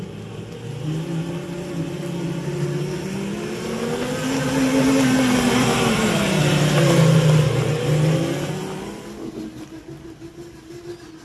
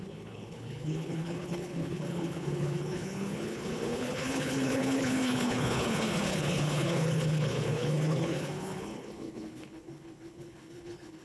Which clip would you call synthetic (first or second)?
second